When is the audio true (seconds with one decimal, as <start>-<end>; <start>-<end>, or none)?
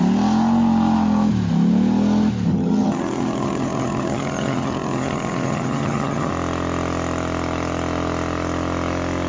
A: 0.0-2.5; 6.3-9.3